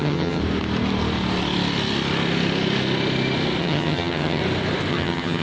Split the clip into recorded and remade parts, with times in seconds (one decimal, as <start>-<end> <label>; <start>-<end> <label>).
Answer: 0.0-0.4 remade; 0.4-3.6 recorded; 3.6-4.4 remade; 4.4-4.9 recorded; 4.9-5.4 remade